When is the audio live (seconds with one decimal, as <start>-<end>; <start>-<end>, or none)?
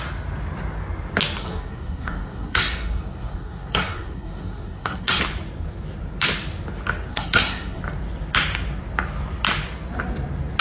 0.0-1.4; 5.2-7.1; 7.8-10.6